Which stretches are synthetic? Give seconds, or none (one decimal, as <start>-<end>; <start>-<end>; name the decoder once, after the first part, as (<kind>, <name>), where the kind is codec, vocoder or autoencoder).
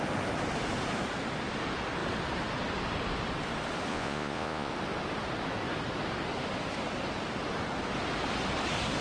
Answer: 3.9-4.7 (vocoder, Vocos)